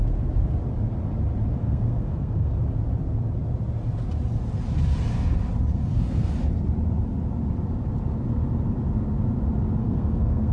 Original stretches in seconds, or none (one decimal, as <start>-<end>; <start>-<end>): 0.0-1.6; 2.6-5.7; 6.3-9.8